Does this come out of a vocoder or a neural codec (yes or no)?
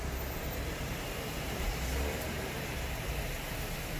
yes